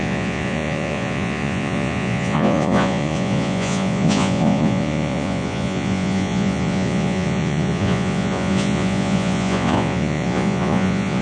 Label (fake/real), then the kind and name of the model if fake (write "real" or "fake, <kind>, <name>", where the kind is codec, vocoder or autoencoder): fake, vocoder, Vocos